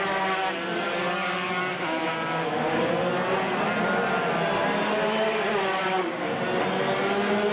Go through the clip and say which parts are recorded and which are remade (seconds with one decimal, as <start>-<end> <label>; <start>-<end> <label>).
0.0-2.0 recorded; 2.0-2.9 remade; 2.9-5.8 recorded; 5.8-6.4 remade; 6.4-7.5 recorded